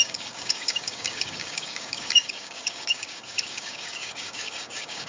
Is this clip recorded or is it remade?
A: remade